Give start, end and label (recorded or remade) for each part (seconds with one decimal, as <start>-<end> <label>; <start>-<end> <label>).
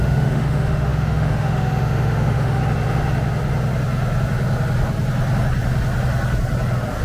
0.0-2.6 remade; 2.6-7.0 recorded